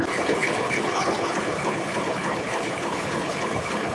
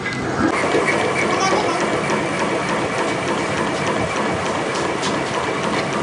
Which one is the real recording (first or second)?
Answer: second